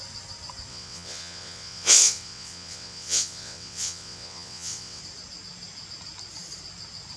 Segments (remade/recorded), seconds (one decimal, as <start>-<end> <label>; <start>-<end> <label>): 0.0-0.7 recorded; 0.7-5.0 remade; 5.0-7.2 recorded